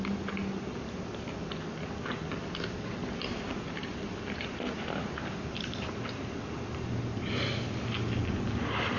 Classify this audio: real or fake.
real